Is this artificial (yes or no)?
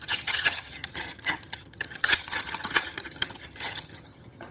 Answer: yes